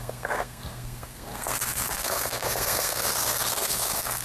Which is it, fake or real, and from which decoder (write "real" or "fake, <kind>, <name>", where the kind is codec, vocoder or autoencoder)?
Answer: fake, codec, SNAC